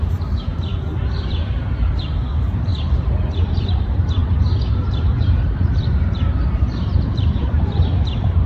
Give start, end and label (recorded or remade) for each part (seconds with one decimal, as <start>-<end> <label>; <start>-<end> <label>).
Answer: 0.0-0.7 remade; 0.7-1.2 recorded; 1.2-2.7 remade; 2.7-3.3 recorded; 3.3-4.2 remade; 4.2-4.9 recorded; 4.9-8.5 remade